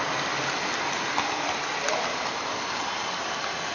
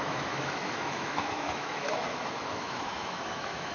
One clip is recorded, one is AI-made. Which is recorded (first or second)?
first